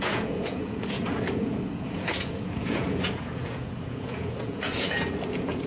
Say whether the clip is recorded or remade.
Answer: remade